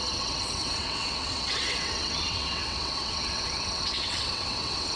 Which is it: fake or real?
fake